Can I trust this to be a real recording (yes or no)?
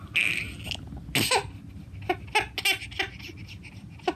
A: yes